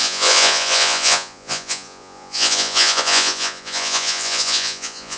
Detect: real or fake fake